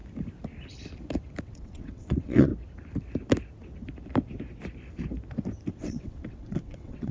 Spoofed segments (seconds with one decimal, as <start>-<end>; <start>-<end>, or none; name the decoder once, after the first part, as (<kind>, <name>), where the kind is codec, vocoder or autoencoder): 1.4-2.5 (vocoder, WaveNeXt); 5.7-7.1